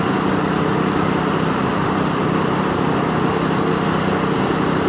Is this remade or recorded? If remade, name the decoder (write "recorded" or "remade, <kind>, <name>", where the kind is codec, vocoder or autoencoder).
recorded